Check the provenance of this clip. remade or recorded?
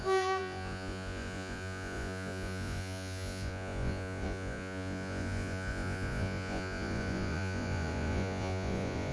remade